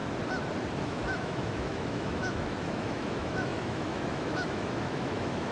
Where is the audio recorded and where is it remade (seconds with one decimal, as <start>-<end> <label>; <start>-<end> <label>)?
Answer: 0.0-0.8 recorded; 0.8-5.5 remade